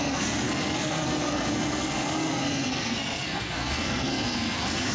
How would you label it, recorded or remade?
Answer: remade